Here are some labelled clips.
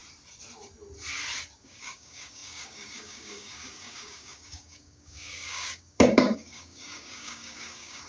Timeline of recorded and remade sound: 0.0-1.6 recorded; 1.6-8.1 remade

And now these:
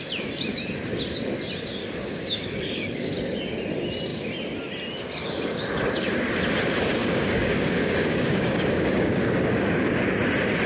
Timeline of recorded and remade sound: 0.0-1.8 recorded; 1.8-3.1 remade; 3.1-7.0 recorded; 7.0-9.9 remade; 9.9-10.7 recorded

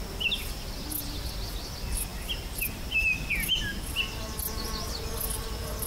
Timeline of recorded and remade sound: 0.0-5.9 recorded

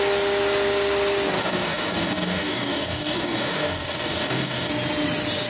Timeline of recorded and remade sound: 0.0-1.4 recorded; 1.4-4.7 remade; 4.7-5.5 recorded